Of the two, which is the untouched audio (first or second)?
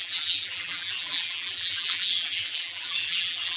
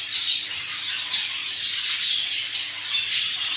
second